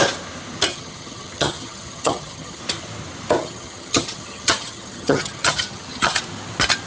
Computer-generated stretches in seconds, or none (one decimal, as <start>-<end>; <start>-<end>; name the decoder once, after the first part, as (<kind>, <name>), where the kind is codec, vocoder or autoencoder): 0.7-2.6 (vocoder, HiFi-GAN); 3.4-6.2